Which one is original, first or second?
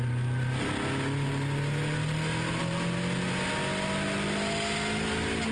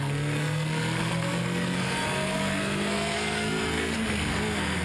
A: first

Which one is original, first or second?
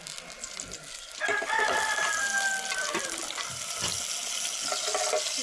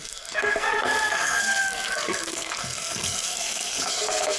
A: first